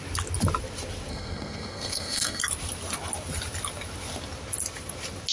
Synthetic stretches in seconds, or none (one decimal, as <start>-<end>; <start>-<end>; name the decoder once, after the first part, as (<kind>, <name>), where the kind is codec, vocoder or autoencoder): 1.1-2.4 (codec, SNAC)